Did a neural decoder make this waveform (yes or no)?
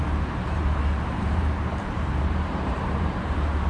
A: yes